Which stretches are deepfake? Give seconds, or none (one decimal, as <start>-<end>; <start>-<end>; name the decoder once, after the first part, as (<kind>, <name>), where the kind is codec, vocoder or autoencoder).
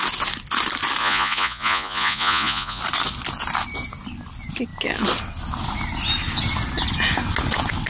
1.0-2.8 (vocoder, Vocos)